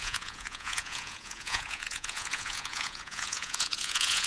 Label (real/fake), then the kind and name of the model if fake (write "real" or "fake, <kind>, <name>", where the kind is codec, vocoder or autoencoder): fake, vocoder, Vocos